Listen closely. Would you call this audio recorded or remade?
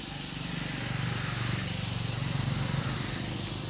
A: recorded